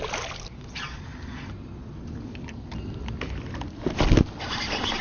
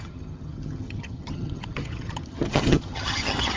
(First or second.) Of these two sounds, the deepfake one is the second